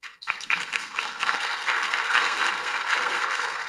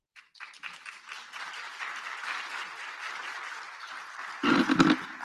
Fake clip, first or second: first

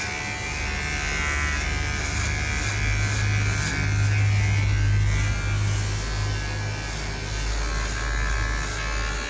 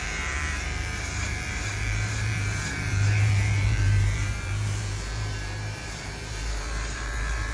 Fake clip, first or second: second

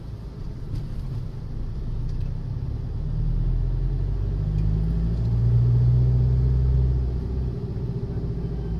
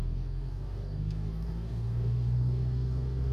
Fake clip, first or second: second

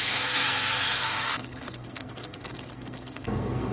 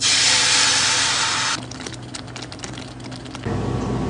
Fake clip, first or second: first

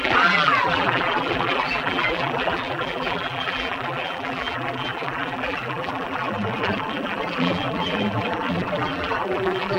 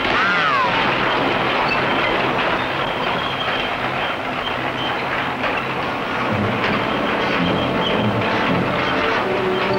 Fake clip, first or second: first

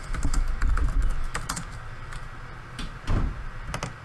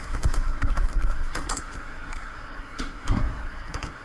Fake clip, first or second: second